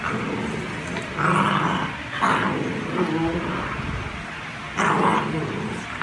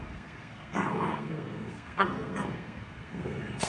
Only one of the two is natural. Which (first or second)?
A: first